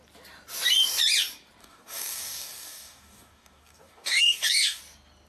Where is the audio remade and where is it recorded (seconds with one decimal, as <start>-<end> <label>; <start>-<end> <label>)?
0.0-1.6 recorded; 1.6-4.8 remade; 4.8-5.3 recorded